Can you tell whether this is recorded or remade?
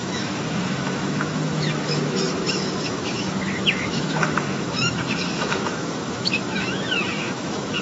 remade